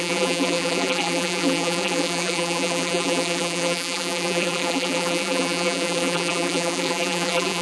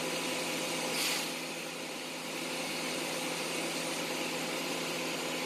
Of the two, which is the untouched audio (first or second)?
second